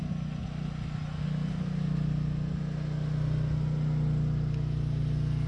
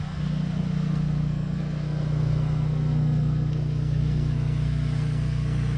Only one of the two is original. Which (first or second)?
first